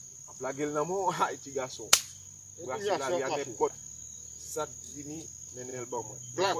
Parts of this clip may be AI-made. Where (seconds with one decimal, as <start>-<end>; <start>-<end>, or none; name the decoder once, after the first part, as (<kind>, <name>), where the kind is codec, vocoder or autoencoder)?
4.7-5.2 (vocoder, BigVGAN v2); 5.7-6.6